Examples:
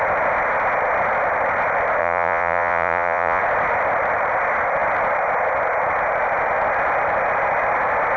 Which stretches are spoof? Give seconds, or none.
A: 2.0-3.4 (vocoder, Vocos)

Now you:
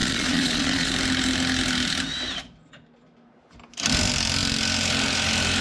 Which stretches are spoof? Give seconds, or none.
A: 0.0-0.9 (vocoder, Vocos)

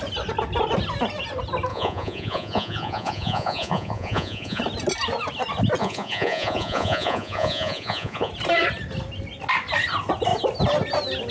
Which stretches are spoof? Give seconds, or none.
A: 1.7-4.6 (vocoder, Vocos); 5.8-8.3

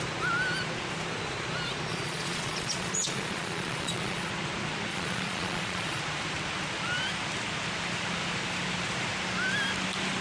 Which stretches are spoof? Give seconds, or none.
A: 1.9-4.3 (vocoder, Vocos); 4.9-6.0